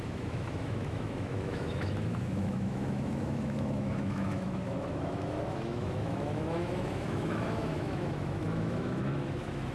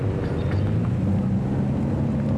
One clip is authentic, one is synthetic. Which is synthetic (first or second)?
first